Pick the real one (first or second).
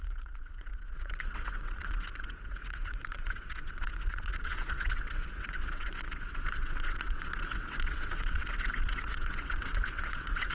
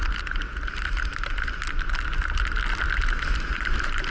second